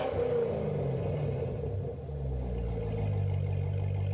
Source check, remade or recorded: recorded